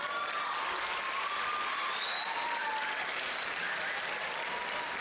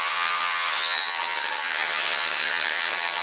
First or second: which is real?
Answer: first